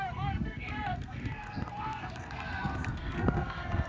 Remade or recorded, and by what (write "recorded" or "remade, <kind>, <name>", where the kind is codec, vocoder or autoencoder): remade, codec, SNAC